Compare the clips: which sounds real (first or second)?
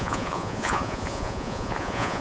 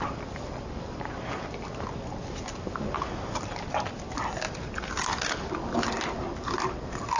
second